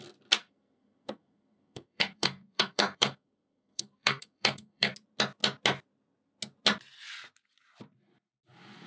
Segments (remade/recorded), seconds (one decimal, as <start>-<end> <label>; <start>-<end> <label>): 0.0-0.4 recorded; 0.4-4.9 remade; 4.9-8.9 recorded